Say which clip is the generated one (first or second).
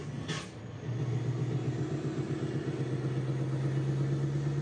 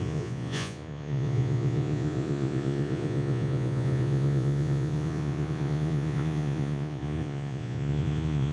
second